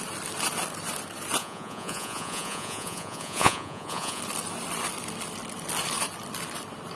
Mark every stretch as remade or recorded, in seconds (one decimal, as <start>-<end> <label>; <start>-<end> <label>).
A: 0.0-1.4 recorded; 1.4-4.2 remade; 4.2-7.0 recorded